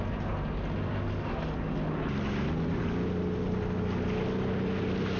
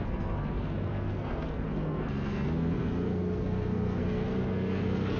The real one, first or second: first